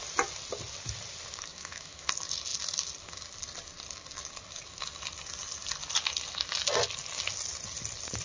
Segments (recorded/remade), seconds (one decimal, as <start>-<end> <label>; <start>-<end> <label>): 0.0-1.5 recorded; 1.5-2.1 remade; 2.1-8.2 recorded